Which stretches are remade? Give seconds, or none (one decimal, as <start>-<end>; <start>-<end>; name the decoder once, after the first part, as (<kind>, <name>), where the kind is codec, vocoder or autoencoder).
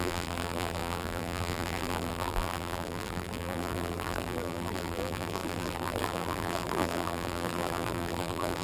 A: 0.0-8.6 (vocoder, BigVGAN v2)